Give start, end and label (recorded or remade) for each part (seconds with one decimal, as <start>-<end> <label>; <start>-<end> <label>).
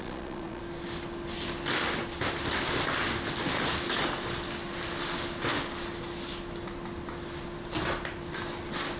0.0-0.6 remade; 0.6-9.0 recorded